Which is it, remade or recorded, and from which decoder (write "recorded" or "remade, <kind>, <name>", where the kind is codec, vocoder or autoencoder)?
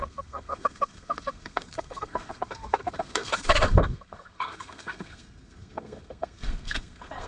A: remade, codec, SNAC